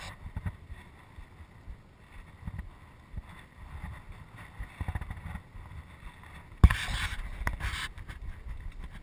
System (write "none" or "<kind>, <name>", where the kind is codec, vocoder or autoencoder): none